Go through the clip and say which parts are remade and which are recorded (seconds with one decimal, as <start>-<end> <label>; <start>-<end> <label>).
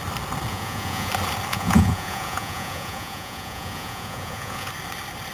0.0-0.5 recorded; 0.5-1.1 remade; 1.1-1.5 recorded; 1.5-4.7 remade; 4.7-5.3 recorded